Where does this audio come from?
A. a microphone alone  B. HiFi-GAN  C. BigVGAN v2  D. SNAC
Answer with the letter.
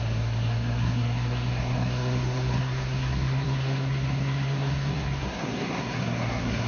D